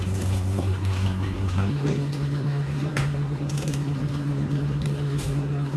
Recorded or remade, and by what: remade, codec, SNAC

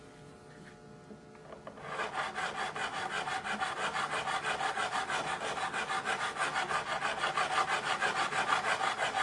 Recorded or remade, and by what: recorded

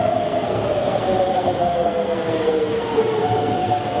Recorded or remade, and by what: remade, codec, SNAC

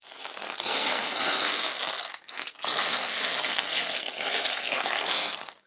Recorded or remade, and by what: remade, codec, SNAC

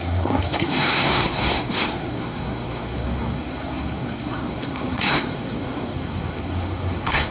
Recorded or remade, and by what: remade, codec, SNAC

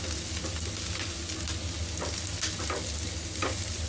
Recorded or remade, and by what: recorded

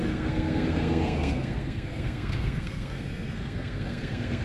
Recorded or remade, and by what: remade, codec, SNAC